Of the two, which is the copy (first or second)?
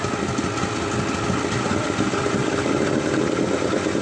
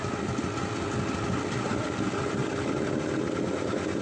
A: second